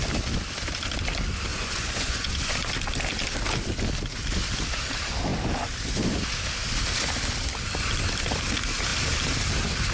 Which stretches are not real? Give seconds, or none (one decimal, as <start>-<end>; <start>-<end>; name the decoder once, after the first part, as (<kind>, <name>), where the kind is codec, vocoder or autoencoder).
1.5-2.7 (vocoder, Vocos)